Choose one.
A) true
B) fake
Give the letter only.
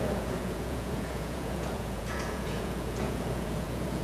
B